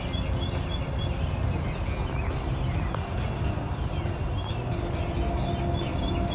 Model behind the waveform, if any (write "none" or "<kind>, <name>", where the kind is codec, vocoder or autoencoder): none